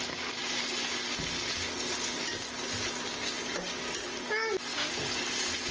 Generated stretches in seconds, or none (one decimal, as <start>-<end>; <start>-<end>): none